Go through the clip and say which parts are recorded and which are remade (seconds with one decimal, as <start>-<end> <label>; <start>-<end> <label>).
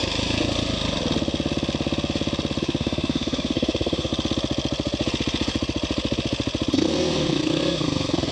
0.0-2.6 recorded; 2.6-4.1 remade; 4.1-6.7 recorded; 6.7-8.3 remade